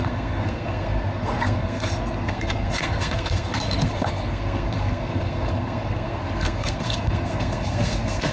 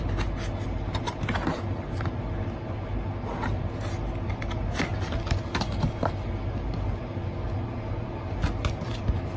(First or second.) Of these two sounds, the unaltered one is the second